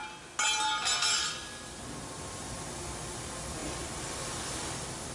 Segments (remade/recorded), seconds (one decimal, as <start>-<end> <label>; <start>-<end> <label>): 0.0-3.6 recorded; 3.6-5.1 remade